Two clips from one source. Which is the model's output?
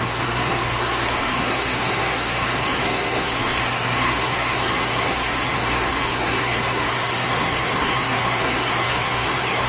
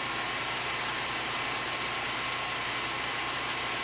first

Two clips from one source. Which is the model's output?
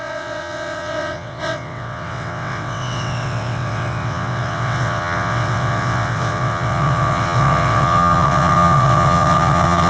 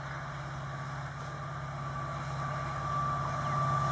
first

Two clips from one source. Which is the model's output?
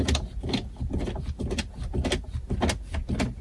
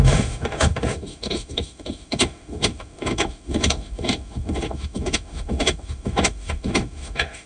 second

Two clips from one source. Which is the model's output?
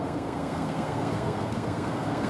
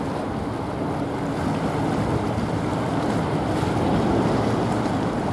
first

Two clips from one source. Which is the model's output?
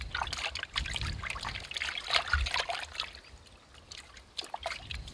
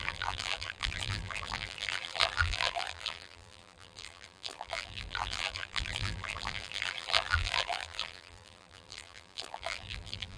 second